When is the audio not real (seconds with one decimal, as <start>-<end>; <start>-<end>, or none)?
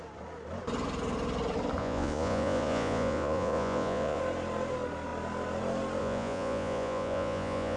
1.8-4.2; 6.0-7.8